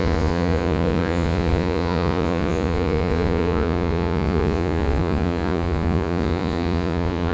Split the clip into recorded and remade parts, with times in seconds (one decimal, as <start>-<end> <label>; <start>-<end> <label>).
0.0-7.3 remade